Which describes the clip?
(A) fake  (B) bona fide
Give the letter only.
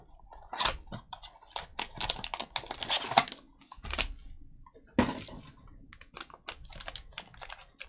B